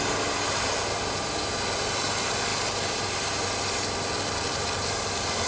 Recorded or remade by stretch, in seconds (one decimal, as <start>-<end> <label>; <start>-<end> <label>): 0.0-5.5 recorded